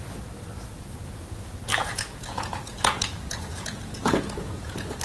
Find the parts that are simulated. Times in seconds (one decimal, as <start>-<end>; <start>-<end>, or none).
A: 1.8-5.0